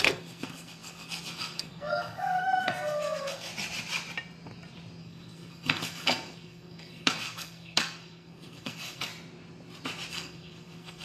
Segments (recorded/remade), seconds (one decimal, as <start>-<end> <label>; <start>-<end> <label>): 0.0-3.5 remade; 3.5-5.0 recorded; 5.0-9.1 remade; 9.1-10.1 recorded; 10.1-11.0 remade